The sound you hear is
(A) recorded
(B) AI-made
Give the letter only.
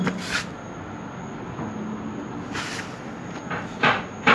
A